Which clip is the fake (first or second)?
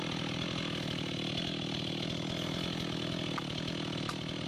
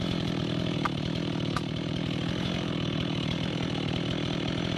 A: second